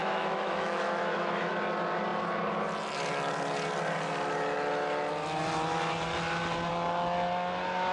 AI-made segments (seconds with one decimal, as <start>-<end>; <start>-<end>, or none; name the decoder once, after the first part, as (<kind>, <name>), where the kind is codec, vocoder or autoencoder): 0.0-1.5 (autoencoder, DAC-VAE)